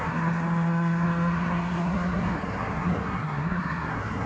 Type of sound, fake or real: fake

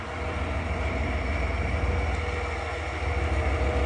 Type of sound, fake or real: real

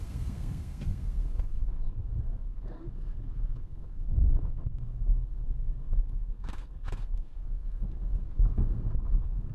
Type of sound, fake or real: fake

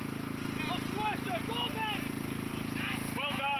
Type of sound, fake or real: real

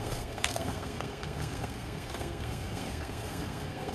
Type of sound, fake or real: fake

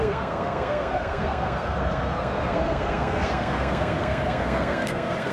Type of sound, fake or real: fake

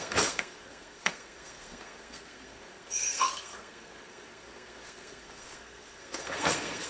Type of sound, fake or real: fake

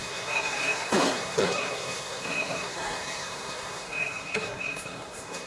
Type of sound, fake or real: fake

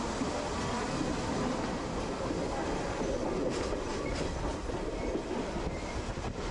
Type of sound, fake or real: real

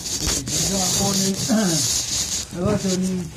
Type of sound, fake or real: real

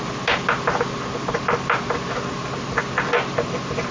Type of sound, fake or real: real